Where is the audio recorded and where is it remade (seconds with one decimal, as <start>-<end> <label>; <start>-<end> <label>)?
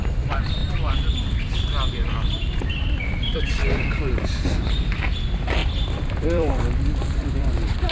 0.0-0.6 remade; 0.6-2.6 recorded; 2.6-3.6 remade; 3.6-4.4 recorded; 4.4-5.6 remade; 5.6-6.2 recorded; 6.2-7.9 remade